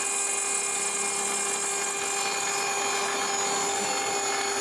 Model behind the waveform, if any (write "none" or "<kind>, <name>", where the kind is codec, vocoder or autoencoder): none